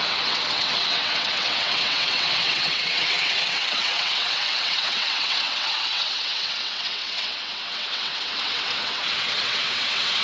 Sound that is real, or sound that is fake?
fake